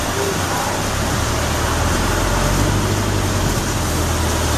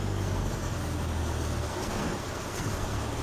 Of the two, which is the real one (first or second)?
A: first